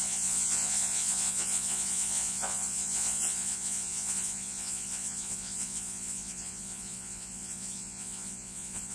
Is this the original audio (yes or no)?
no